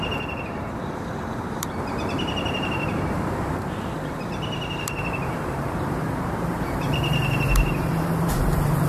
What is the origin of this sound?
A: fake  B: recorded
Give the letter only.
A